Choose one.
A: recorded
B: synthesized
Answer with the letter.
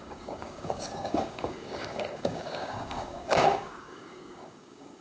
B